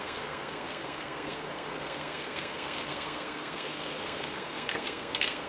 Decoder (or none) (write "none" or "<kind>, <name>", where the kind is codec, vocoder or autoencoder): codec, SNAC